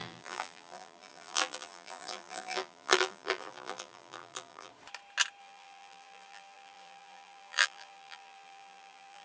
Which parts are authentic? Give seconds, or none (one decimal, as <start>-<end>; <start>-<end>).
4.7-5.4

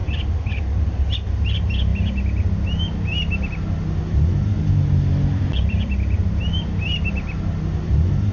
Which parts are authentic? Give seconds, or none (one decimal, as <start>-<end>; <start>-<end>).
0.6-5.3; 7.1-8.3

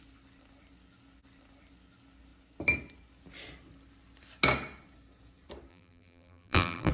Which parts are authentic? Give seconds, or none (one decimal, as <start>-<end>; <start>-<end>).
0.0-5.7

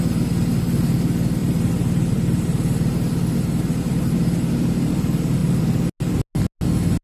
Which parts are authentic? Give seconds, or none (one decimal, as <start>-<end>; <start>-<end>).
0.0-1.4; 4.9-7.0

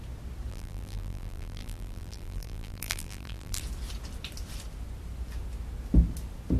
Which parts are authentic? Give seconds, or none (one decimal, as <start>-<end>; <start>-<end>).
0.0-0.5; 3.6-6.6

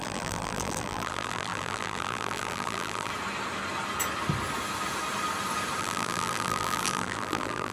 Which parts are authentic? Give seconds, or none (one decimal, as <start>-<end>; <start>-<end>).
3.1-5.8